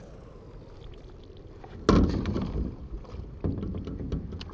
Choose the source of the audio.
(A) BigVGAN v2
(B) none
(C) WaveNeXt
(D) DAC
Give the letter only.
B